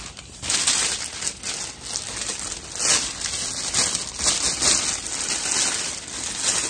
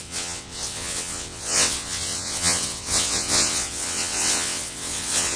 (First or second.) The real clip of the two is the first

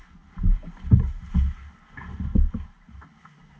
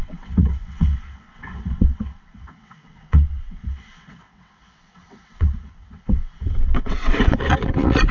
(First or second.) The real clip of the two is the first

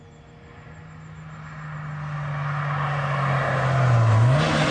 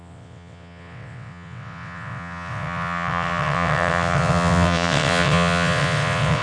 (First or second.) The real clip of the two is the first